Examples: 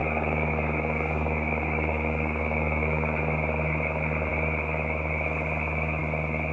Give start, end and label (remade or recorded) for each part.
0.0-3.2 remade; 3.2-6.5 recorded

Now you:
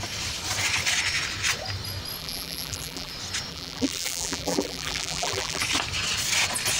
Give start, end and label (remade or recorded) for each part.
0.0-2.2 recorded; 2.2-3.1 remade; 3.1-3.5 recorded; 3.5-5.6 remade; 5.6-6.8 recorded

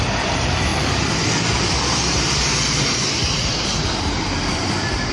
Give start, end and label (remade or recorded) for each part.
0.0-5.1 remade

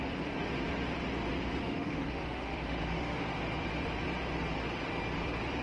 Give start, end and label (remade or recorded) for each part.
0.0-1.6 recorded; 1.6-3.2 remade; 3.2-5.6 recorded

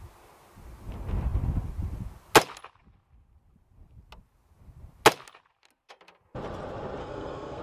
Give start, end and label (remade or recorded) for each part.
0.0-7.0 recorded; 7.0-7.6 remade